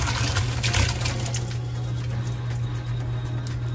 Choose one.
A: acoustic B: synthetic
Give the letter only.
A